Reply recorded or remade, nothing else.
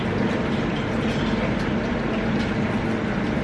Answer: recorded